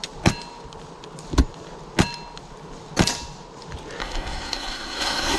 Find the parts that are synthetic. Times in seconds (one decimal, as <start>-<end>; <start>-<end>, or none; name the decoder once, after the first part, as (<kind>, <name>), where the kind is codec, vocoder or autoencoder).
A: 4.0-5.4 (codec, SNAC)